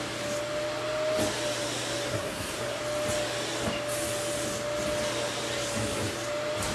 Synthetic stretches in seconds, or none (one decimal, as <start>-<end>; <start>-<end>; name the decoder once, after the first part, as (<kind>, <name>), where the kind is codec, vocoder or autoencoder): 2.1-2.8 (codec, SNAC)